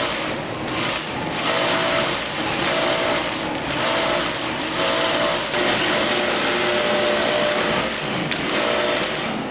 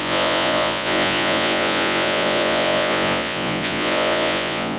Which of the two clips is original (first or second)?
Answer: first